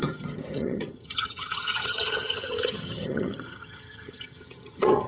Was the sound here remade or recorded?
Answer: remade